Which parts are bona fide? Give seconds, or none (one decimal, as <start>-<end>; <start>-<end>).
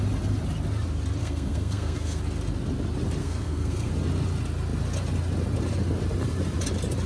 0.0-1.2; 2.2-3.2; 3.9-7.1